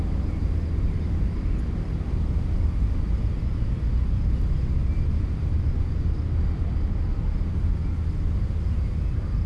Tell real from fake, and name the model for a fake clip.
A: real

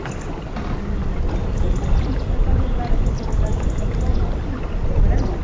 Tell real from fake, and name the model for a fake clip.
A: real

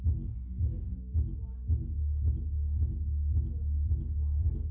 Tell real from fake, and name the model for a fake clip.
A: fake, codec, DAC